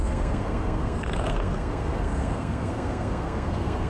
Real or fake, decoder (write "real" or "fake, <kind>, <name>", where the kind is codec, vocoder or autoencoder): fake, codec, SNAC